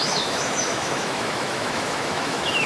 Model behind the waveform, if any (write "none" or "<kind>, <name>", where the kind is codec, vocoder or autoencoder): autoencoder, DAC-VAE